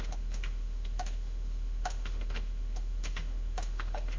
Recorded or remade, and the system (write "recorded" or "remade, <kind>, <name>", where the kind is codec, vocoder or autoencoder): remade, autoencoder, DAC-VAE